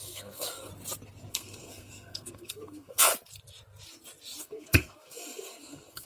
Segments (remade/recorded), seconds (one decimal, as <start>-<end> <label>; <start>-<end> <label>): 0.0-0.7 remade; 0.7-1.3 recorded; 1.3-3.1 remade; 3.1-4.4 recorded; 4.4-6.1 remade